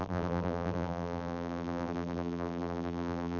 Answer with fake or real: fake